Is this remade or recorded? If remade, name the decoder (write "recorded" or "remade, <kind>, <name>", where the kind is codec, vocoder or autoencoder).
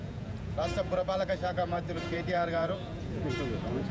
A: remade, vocoder, Vocos